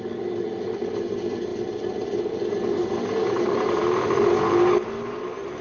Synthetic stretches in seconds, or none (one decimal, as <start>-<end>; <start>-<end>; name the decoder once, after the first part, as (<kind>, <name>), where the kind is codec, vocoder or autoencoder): none